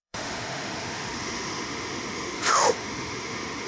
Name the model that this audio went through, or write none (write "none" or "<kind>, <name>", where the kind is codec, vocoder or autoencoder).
autoencoder, DAC-VAE